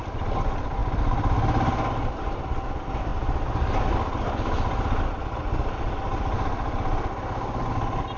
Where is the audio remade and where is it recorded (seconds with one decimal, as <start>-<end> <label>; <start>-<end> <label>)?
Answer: 0.0-8.2 recorded